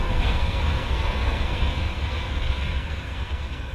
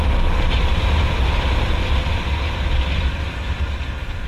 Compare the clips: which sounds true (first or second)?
second